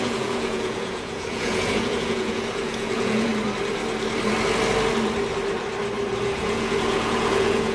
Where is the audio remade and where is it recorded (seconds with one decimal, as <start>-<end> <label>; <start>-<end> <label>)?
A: 0.0-3.3 remade; 3.3-6.2 recorded; 6.2-7.7 remade